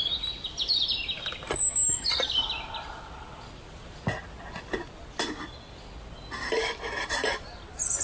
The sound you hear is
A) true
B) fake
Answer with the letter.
A